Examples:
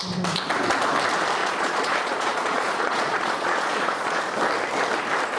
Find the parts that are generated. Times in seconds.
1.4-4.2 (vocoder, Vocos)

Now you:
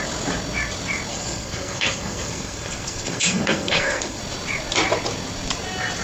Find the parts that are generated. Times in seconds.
1.1-4.2 (codec, SNAC)

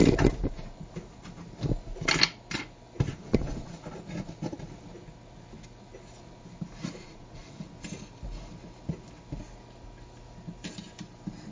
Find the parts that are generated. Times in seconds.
3.1-3.9 (vocoder, Vocos); 6.8-7.7

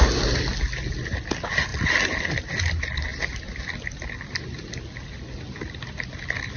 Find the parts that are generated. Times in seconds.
none